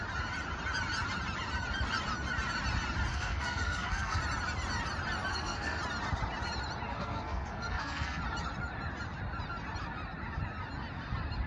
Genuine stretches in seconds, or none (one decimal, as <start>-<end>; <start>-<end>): 0.0-3.1; 4.2-5.3; 5.8-6.9; 8.2-11.5